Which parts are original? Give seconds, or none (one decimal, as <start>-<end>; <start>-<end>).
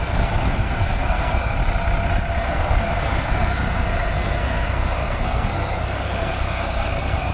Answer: 1.6-2.5